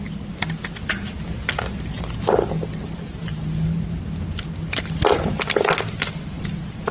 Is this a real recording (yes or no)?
yes